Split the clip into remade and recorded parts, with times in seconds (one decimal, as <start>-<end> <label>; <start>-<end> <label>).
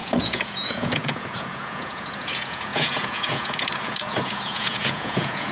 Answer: 0.0-5.5 remade